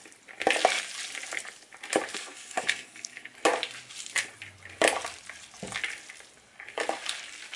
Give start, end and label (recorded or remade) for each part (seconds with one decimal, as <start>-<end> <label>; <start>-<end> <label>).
0.0-2.1 recorded; 2.1-3.3 remade; 3.3-7.6 recorded